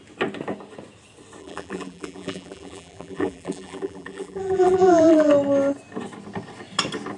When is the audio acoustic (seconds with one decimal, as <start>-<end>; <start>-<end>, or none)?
0.0-1.4; 5.3-7.2